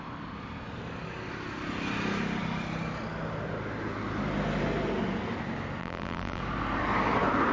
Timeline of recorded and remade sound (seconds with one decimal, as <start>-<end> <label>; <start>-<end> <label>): 0.0-5.8 recorded; 5.8-6.4 remade; 6.4-7.5 recorded